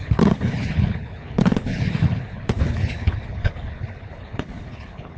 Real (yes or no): no